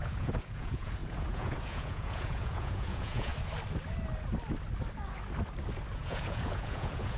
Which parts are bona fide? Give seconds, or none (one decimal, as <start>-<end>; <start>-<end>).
3.3-5.9